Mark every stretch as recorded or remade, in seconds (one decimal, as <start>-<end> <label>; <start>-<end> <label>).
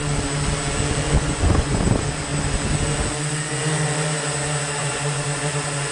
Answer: 0.0-1.2 recorded; 1.2-1.8 remade; 1.8-4.8 recorded; 4.8-5.9 remade